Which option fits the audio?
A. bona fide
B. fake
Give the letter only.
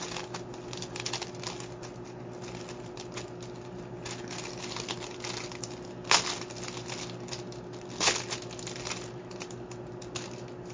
A